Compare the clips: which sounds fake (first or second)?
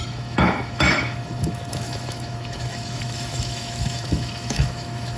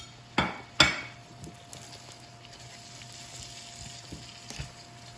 first